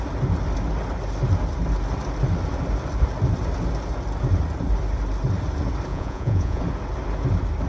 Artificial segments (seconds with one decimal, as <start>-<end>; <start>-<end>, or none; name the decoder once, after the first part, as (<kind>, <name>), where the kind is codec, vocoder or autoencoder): 5.9-6.6 (vocoder, Vocos)

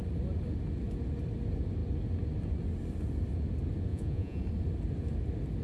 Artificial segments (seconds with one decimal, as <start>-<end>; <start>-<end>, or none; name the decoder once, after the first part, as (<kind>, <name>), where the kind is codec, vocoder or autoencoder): 3.9-4.4 (vocoder, Vocos)

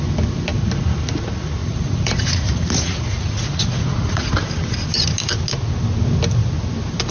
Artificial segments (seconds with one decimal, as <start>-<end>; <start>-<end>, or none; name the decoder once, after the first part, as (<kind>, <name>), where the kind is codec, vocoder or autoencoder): 1.6-4.3 (vocoder, Vocos)

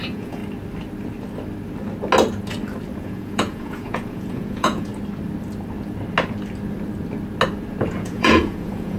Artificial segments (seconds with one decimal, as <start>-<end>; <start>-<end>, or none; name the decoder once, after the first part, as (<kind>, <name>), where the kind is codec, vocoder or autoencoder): 0.0-0.4 (vocoder, Vocos); 3.0-4.9; 7.9-9.0

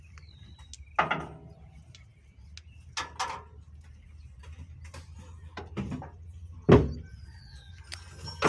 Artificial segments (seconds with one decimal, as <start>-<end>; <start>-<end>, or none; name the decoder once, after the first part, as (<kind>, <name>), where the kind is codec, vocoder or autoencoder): 7.1-7.7 (vocoder, Vocos)

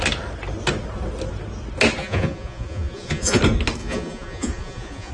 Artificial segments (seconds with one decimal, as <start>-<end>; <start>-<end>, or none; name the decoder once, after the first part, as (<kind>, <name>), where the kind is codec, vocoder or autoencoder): 2.0-3.4 (vocoder, Vocos); 3.8-5.1

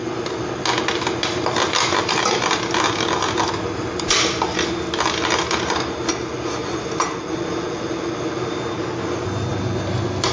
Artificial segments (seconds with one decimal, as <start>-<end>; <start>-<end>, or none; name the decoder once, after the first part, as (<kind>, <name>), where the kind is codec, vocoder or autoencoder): none

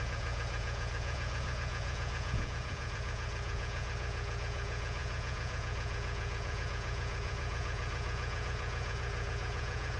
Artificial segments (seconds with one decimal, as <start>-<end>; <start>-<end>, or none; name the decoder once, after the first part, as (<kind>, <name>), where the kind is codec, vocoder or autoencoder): 0.0-10.0 (vocoder, Vocos)